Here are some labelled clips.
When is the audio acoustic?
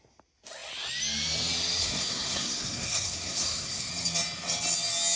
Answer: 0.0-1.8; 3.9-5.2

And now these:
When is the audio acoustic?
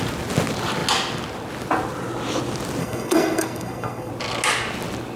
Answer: 0.0-2.8; 4.1-5.2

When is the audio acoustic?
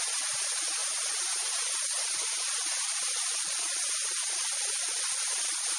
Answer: 0.0-5.8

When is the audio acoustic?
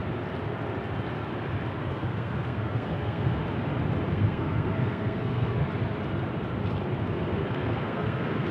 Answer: 0.0-1.8; 3.4-4.1; 5.6-7.0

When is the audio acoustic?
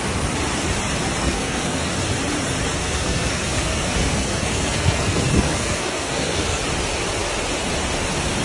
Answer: 0.0-1.2; 1.9-2.8; 6.6-8.4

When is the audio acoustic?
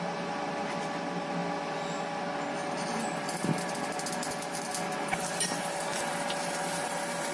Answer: 0.0-7.3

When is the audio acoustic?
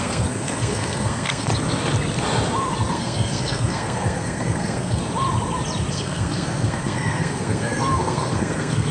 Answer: 1.5-2.9; 5.0-5.9